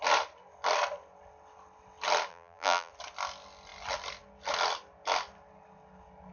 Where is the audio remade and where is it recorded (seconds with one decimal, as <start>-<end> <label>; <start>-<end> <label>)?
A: 0.0-2.3 recorded; 2.3-2.9 remade; 2.9-6.3 recorded